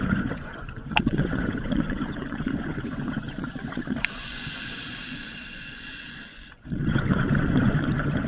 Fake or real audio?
fake